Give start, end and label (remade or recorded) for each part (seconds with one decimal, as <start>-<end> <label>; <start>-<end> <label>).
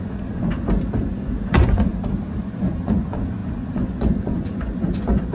0.0-0.4 remade; 0.4-1.0 recorded; 1.0-1.9 remade; 1.9-2.4 recorded; 2.4-5.3 remade